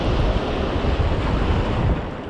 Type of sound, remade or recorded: recorded